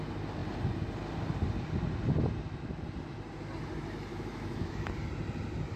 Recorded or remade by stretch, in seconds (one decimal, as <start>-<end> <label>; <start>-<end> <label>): 0.0-4.1 recorded; 4.1-4.9 remade; 4.9-5.8 recorded